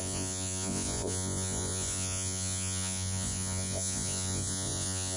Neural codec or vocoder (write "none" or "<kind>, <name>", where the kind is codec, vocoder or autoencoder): vocoder, Vocos